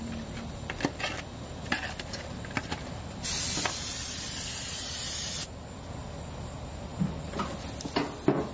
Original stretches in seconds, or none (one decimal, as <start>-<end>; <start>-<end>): 0.0-8.5